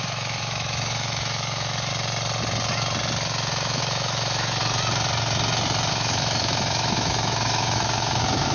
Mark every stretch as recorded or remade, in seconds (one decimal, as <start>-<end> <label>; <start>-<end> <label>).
0.0-1.9 remade; 1.9-3.5 recorded; 3.5-4.6 remade; 4.6-5.9 recorded; 5.9-8.5 remade